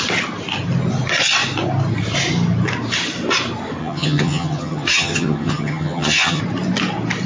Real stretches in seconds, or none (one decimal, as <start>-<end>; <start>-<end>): 0.0-3.8; 6.4-7.3